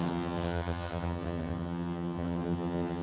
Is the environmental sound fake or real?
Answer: fake